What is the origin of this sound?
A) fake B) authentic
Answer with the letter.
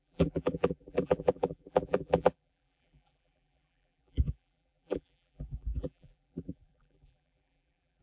A